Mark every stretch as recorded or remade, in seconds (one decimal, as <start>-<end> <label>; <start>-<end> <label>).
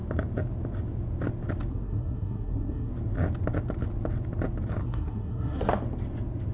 0.0-1.7 recorded; 1.7-2.9 remade; 2.9-4.8 recorded; 4.8-5.6 remade; 5.6-6.5 recorded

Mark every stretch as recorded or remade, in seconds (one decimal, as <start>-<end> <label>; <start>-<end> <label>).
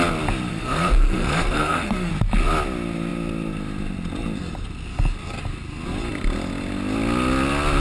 0.0-0.5 recorded; 0.5-2.1 remade; 2.1-7.8 recorded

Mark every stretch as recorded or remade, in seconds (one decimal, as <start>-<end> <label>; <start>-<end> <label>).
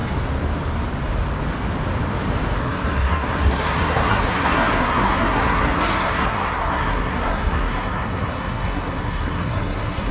0.0-2.6 recorded; 2.6-10.1 remade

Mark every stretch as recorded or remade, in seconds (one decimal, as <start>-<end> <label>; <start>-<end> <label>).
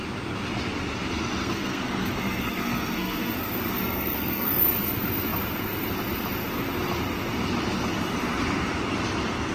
0.0-1.4 recorded; 1.4-4.6 remade; 4.6-9.5 recorded